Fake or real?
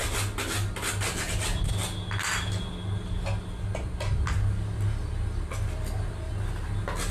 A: real